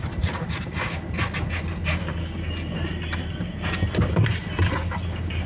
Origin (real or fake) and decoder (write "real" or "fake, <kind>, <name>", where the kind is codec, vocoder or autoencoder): real